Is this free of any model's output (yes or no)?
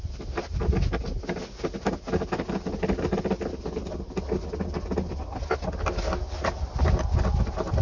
yes